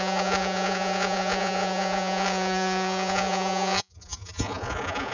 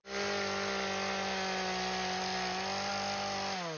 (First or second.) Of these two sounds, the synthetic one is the first